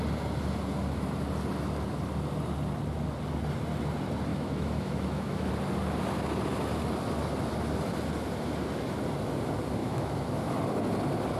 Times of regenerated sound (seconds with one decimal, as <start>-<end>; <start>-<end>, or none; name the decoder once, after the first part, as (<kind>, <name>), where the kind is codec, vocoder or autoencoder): 4.3-5.5 (autoencoder, DAC-VAE); 9.8-10.5